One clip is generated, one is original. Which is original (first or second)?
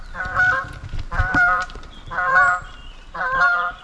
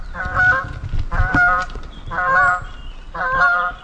second